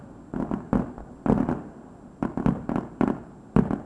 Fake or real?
real